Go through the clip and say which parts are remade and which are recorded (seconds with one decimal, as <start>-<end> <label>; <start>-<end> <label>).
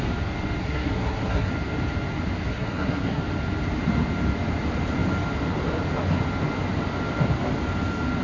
0.0-0.6 recorded; 0.6-1.5 remade; 1.5-2.5 recorded; 2.5-3.2 remade; 3.2-8.2 recorded